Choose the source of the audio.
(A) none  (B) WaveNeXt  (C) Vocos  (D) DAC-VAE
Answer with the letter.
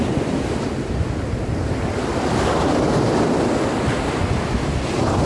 A